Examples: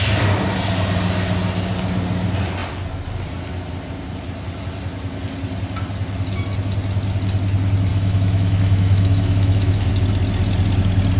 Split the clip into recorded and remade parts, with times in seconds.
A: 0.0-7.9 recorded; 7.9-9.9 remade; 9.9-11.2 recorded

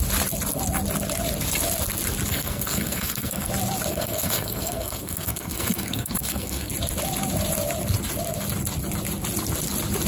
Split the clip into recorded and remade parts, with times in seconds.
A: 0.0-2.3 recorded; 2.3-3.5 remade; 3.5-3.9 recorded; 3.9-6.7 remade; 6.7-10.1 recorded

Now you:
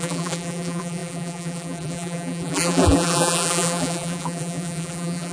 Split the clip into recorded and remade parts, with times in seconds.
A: 0.0-5.3 remade

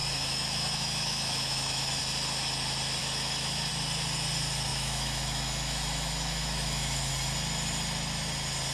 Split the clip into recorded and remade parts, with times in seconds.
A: 0.0-2.0 remade; 2.0-3.0 recorded; 3.0-3.7 remade; 3.7-4.7 recorded; 4.7-7.1 remade; 7.1-8.7 recorded

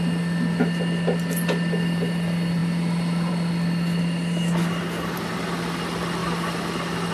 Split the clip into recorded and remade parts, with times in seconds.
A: 0.0-7.1 recorded